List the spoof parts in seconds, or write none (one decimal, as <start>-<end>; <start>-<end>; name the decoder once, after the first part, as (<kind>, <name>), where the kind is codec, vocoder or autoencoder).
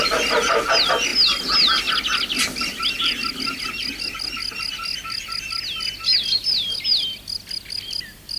none